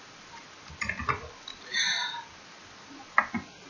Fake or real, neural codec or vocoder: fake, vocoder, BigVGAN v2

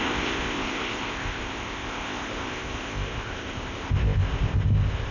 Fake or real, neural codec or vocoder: fake, codec, ZipCodec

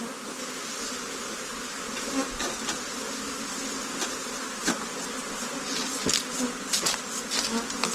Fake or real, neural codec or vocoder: real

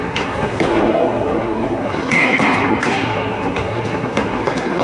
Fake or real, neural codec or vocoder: fake, codec, SNAC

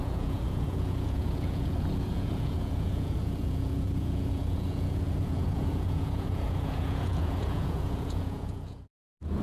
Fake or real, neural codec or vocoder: fake, vocoder, Vocos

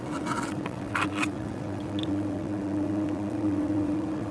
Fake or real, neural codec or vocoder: fake, vocoder, WaveNeXt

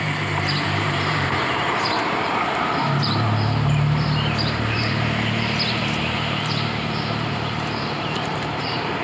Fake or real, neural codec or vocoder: fake, vocoder, BigVGAN v2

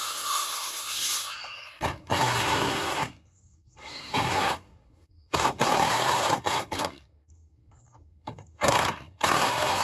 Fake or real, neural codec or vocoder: fake, codec, SNAC